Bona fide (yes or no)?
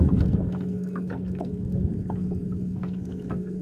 no